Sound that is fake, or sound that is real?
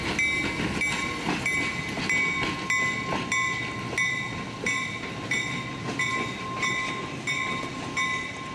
real